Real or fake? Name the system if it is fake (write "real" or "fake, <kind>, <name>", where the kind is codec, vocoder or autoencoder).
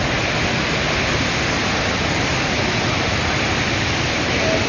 real